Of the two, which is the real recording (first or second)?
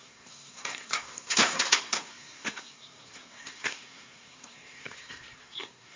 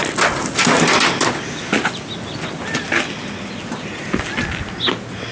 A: second